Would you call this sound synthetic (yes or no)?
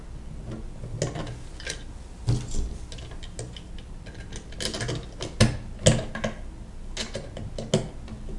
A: no